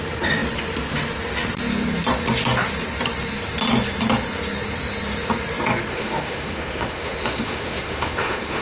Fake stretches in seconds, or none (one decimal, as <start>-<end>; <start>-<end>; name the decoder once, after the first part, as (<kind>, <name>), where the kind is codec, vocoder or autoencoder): 5.9-8.6 (autoencoder, DAC-VAE)